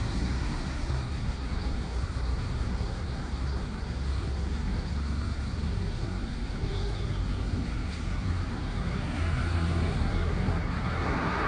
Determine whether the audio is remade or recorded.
remade